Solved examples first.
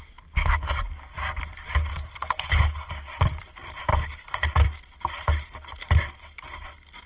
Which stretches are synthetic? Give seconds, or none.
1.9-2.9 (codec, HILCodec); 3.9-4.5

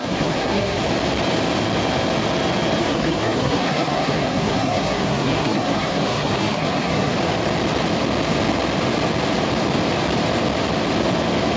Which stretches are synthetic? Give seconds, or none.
0.0-0.8 (codec, SNAC); 2.8-7.1

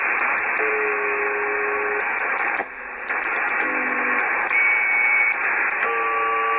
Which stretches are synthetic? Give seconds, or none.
none

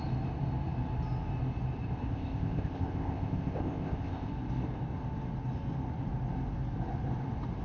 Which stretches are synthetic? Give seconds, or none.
2.1-4.3 (codec, ZipCodec)

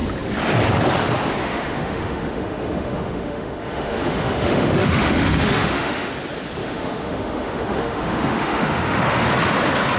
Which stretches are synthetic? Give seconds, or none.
1.4-6.1 (autoencoder, DAC-VAE); 6.6-9.3

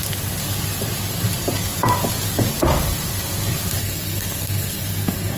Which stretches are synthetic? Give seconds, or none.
3.8-5.4 (codec, SNAC)

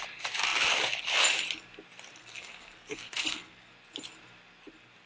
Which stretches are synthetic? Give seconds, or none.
2.2-3.7 (codec, SNAC)

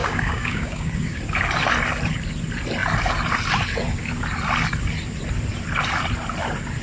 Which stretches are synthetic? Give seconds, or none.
0.0-1.2 (codec, DAC)